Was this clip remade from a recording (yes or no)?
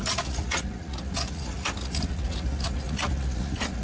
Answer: yes